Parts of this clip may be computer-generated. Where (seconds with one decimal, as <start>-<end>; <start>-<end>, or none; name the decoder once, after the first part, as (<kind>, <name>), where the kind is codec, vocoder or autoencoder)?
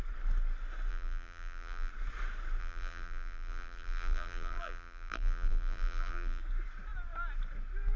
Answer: 0.9-1.9 (vocoder, BigVGAN v2); 2.6-6.4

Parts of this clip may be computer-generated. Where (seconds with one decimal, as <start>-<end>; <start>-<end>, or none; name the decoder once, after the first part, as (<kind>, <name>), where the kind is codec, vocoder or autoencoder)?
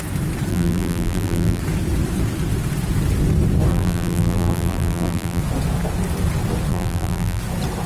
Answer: 0.5-1.6 (vocoder, BigVGAN v2); 3.7-5.4; 6.7-7.4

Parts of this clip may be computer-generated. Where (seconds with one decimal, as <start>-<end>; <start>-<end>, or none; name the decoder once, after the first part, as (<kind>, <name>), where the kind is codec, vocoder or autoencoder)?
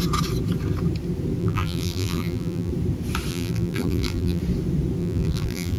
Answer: 1.4-2.7 (vocoder, BigVGAN v2); 3.3-4.4; 5.0-5.8